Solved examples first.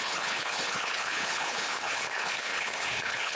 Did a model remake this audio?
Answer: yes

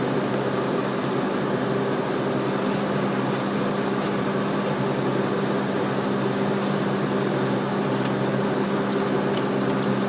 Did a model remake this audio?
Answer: no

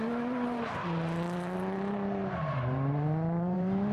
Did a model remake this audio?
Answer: yes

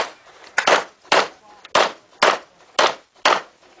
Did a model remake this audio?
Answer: no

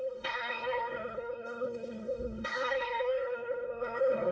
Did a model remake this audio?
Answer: yes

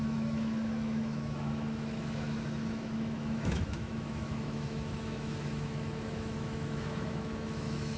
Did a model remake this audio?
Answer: yes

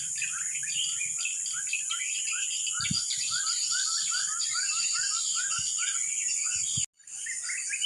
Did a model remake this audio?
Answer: no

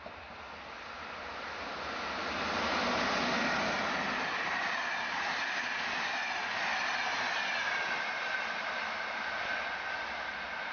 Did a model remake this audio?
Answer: no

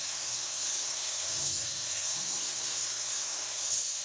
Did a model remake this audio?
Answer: yes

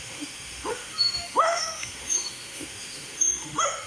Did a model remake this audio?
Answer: yes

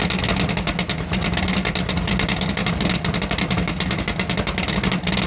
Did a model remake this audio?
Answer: no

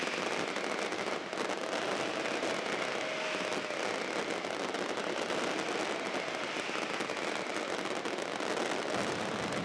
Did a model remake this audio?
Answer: no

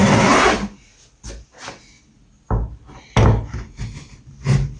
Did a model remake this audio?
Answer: no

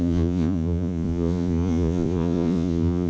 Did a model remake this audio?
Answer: yes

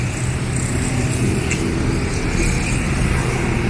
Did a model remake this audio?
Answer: no